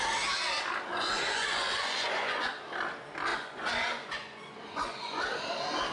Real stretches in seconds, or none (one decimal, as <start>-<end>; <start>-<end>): 0.0-0.9; 2.5-3.3; 5.2-5.9